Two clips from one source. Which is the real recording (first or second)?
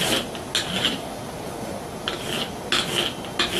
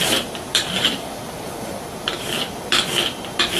first